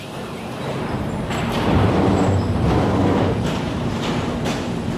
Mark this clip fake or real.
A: fake